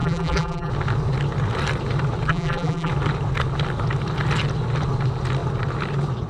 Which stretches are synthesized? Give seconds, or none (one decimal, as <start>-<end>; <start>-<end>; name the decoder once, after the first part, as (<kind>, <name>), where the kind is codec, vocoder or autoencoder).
0.0-0.7 (vocoder, BigVGAN v2); 2.3-2.9